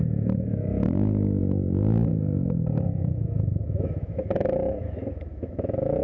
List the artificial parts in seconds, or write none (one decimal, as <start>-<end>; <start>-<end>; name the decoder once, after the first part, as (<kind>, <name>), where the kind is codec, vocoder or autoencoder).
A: 0.0-6.0 (autoencoder, DAC-VAE)